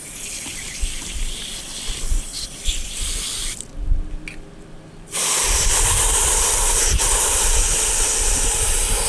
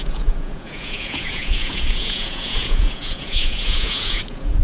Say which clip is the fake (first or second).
second